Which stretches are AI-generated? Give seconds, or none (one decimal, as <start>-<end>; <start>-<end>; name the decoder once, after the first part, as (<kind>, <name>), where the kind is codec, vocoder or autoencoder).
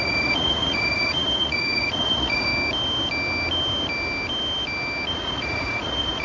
0.0-2.5 (vocoder, Vocos); 5.1-6.2